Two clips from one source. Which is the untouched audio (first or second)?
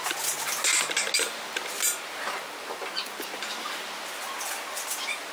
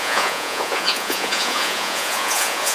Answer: first